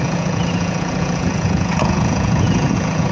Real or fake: fake